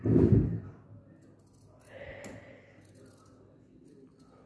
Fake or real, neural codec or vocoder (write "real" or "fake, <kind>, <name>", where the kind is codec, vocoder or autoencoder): real